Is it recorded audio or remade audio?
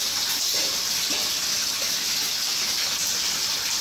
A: recorded